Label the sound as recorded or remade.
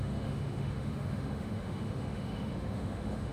remade